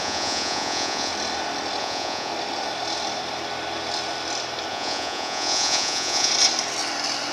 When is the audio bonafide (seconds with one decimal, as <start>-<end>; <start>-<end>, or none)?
1.1-1.8; 2.3-4.7; 6.3-7.3